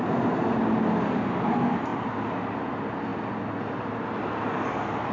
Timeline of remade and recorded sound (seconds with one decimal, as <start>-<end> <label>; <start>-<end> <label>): 0.0-5.1 recorded